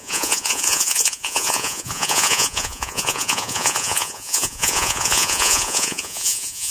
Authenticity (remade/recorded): remade